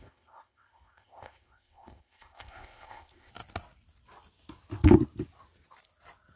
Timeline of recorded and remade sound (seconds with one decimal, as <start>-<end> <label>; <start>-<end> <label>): 0.0-3.3 remade; 3.3-6.4 recorded

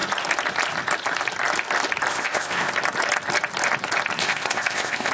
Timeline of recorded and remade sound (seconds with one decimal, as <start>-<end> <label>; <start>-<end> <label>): 0.0-2.1 recorded; 2.1-2.7 remade; 2.7-4.2 recorded; 4.2-5.1 remade

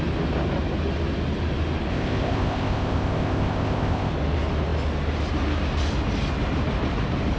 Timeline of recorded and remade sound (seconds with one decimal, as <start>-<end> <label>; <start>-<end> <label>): 0.0-1.9 recorded; 1.9-4.1 remade; 4.1-7.4 recorded

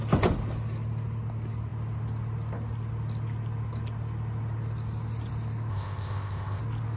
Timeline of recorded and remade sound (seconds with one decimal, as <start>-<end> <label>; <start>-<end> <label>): 0.0-5.7 recorded; 5.7-6.6 remade; 6.6-7.0 recorded

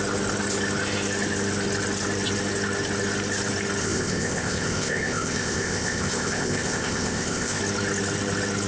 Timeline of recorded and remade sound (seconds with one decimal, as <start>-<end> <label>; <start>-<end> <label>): 0.0-3.8 recorded; 3.8-7.6 remade; 7.6-8.7 recorded

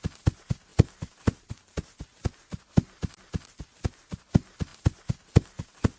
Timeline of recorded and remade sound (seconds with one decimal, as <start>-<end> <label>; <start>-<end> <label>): 0.0-6.0 recorded